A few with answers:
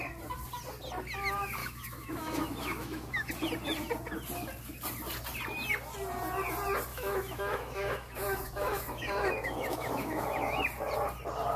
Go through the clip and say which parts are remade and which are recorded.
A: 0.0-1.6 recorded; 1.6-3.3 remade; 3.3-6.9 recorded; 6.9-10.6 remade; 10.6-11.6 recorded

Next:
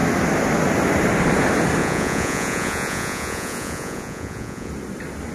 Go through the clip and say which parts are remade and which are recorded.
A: 0.0-1.8 recorded; 1.8-4.7 remade; 4.7-5.3 recorded

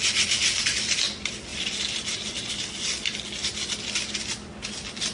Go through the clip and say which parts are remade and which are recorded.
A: 0.0-5.1 recorded

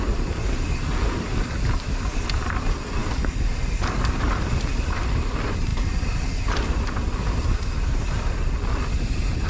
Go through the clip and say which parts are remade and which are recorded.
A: 0.0-9.5 recorded

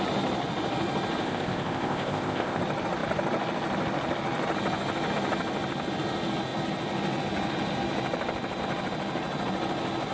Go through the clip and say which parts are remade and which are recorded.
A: 0.0-1.2 recorded; 1.2-2.6 remade; 2.6-10.1 recorded

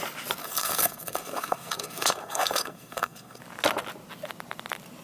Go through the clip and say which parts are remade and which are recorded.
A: 0.0-0.4 recorded; 0.4-3.4 remade; 3.4-5.0 recorded

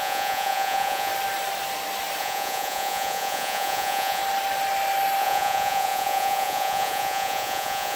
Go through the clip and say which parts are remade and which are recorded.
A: 0.0-1.1 remade; 1.1-2.2 recorded; 2.2-4.2 remade; 4.2-5.2 recorded; 5.2-8.0 remade